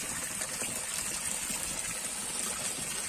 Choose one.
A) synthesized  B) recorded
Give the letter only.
B